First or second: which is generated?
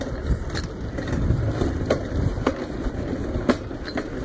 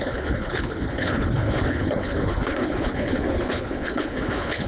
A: second